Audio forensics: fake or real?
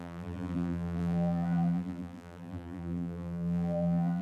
fake